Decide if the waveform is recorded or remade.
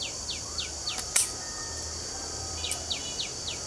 recorded